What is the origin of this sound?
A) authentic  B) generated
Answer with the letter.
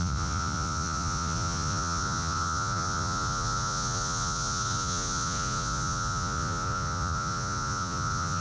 B